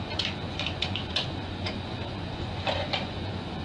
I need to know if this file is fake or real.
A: fake